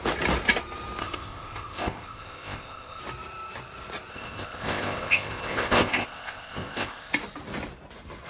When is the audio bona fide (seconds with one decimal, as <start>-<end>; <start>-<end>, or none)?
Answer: 0.0-1.0; 3.0-4.1; 7.1-8.3